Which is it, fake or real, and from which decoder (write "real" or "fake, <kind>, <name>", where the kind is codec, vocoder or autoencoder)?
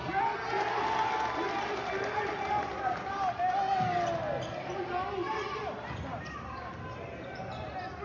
real